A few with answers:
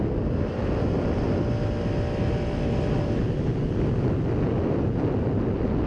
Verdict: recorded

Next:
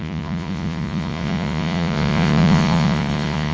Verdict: remade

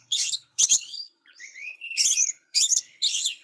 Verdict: remade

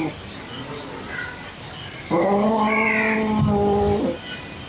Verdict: recorded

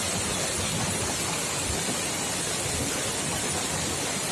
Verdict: recorded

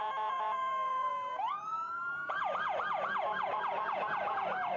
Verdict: remade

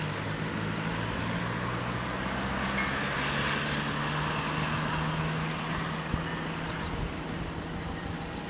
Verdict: recorded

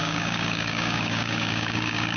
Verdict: remade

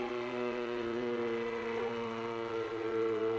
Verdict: remade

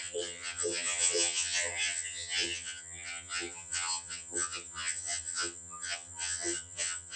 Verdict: remade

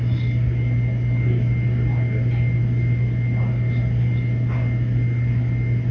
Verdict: recorded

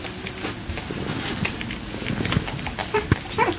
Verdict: recorded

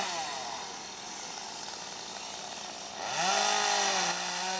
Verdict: recorded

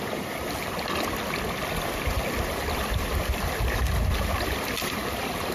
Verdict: recorded